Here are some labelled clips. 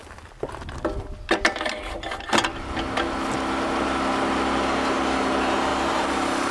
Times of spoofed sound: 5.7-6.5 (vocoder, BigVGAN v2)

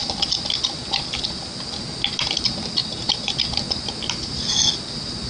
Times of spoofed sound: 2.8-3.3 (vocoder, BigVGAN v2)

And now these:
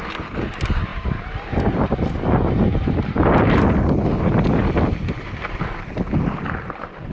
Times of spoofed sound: 0.9-2.3 (vocoder, BigVGAN v2); 2.7-7.1

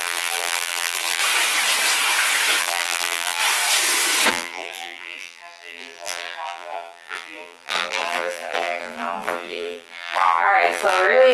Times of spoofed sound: 0.0-1.2 (vocoder, BigVGAN v2); 2.6-3.4; 4.3-11.3